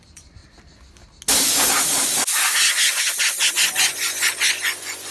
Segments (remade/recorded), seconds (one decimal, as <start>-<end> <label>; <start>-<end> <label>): 0.0-0.4 remade; 0.4-3.5 recorded; 3.5-5.1 remade

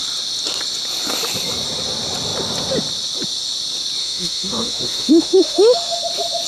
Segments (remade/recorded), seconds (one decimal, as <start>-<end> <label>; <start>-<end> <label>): 0.0-4.0 recorded; 4.0-6.0 remade; 6.0-6.5 recorded

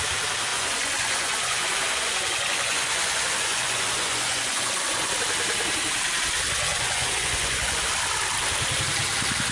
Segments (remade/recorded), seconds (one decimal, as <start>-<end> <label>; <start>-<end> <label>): 0.0-0.5 recorded; 0.5-5.1 remade; 5.1-6.7 recorded; 6.7-7.8 remade; 7.8-9.5 recorded

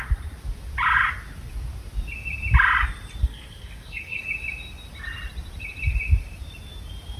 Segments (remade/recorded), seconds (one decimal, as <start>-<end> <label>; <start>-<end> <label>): 0.0-3.2 recorded; 3.2-4.2 remade; 4.2-7.2 recorded

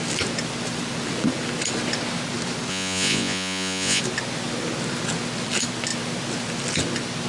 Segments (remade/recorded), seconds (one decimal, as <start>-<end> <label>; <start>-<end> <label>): 0.0-2.7 recorded; 2.7-4.0 remade; 4.0-7.3 recorded

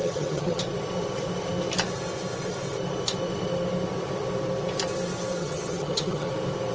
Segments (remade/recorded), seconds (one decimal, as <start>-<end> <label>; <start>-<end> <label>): 0.0-0.6 remade; 0.6-5.4 recorded; 5.4-6.3 remade; 6.3-6.7 recorded

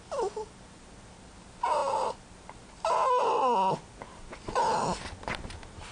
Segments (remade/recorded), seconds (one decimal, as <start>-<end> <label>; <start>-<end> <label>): 0.0-5.9 recorded